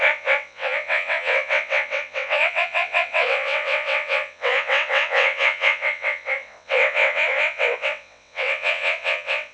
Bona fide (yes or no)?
no